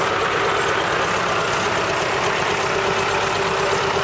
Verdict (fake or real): real